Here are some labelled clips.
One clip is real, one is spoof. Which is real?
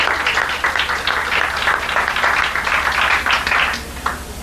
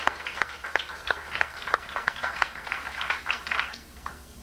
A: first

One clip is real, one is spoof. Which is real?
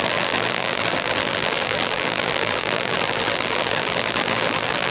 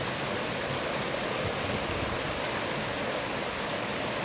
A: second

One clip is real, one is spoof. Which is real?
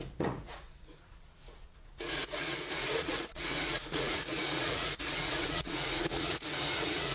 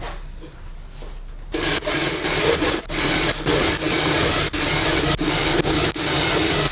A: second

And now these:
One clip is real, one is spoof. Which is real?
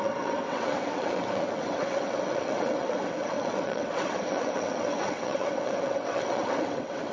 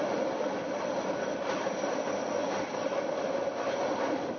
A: second